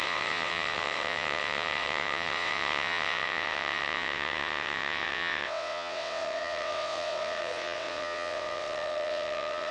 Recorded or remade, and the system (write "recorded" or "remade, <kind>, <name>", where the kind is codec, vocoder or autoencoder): remade, vocoder, WaveNeXt